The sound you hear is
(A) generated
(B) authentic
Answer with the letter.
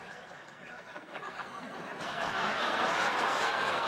A